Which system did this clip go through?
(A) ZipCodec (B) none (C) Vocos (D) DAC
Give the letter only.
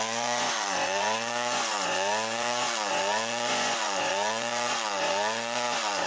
C